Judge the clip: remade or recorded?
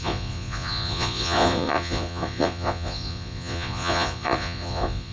remade